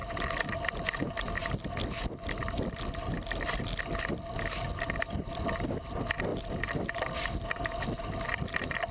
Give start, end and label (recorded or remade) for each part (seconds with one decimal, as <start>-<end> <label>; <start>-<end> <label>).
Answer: 0.0-8.9 recorded